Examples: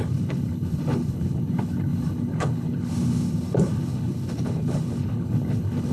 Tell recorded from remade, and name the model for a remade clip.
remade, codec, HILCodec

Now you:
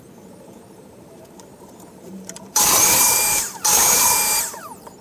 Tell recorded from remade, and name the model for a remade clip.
remade, vocoder, BigVGAN v2